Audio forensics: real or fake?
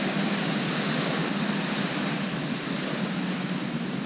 real